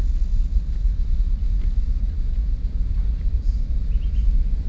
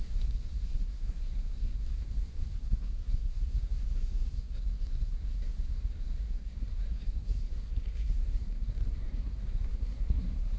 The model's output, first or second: second